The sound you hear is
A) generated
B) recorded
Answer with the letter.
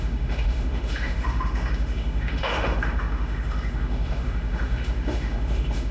A